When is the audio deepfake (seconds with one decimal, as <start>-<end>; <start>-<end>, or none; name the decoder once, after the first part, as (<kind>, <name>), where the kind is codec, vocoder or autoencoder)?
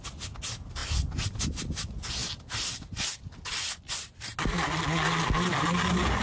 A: none